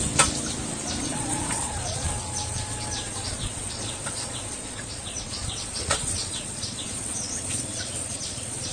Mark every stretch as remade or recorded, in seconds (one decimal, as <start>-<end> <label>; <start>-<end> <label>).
0.0-1.0 recorded; 1.0-8.7 remade